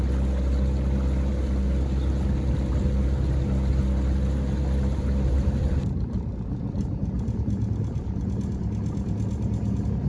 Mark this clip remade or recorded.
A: recorded